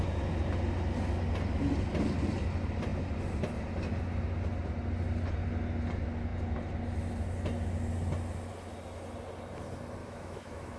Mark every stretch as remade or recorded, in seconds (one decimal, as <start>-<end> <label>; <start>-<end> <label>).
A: 0.0-10.0 recorded; 10.0-10.8 remade

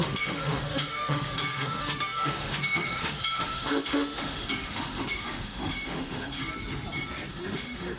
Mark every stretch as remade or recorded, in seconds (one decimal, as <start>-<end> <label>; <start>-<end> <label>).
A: 0.0-6.4 remade; 6.4-7.3 recorded; 7.3-8.0 remade